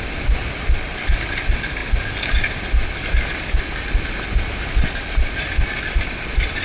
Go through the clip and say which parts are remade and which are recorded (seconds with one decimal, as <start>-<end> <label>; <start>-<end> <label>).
0.0-6.6 recorded